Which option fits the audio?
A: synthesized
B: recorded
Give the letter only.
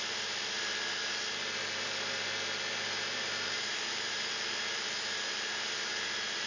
A